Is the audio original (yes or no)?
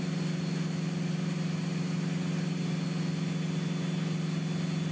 yes